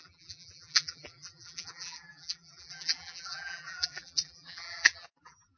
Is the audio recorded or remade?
remade